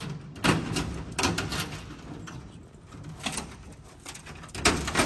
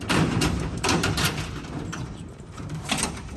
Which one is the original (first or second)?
first